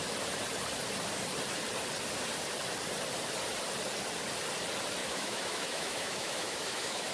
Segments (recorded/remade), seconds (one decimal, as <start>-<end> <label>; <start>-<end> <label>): 0.0-5.0 recorded; 5.0-7.1 remade